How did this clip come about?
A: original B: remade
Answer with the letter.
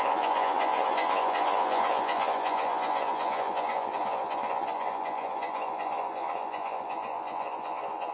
B